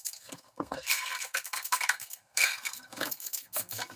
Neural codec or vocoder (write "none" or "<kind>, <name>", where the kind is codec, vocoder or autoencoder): codec, SNAC